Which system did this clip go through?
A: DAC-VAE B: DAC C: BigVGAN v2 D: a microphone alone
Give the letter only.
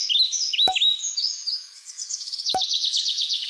A